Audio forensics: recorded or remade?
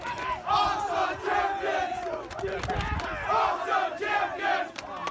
recorded